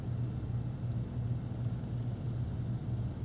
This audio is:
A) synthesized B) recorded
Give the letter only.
B